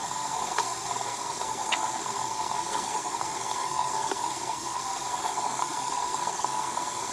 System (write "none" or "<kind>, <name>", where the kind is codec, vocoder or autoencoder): codec, SNAC